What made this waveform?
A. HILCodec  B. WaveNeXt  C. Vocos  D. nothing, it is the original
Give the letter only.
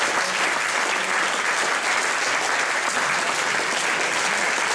D